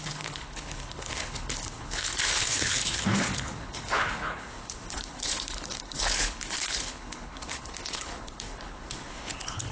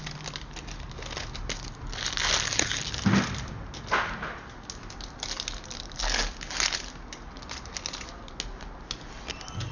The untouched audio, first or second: second